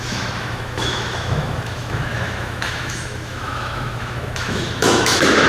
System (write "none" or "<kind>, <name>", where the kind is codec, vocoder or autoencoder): autoencoder, DAC-VAE